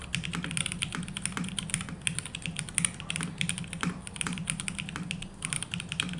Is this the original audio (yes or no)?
yes